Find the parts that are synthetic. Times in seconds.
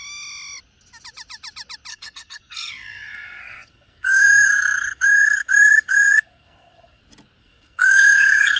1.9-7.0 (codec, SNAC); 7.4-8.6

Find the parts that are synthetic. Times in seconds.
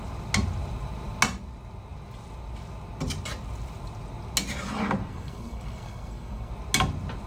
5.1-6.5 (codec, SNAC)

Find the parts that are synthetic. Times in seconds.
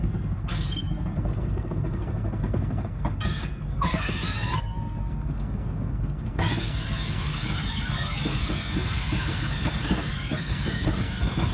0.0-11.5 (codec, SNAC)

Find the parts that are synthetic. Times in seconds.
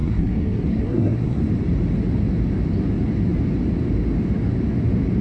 0.0-1.4 (codec, SNAC)